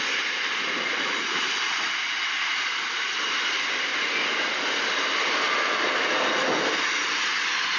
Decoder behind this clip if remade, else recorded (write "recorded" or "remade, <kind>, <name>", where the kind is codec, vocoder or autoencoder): recorded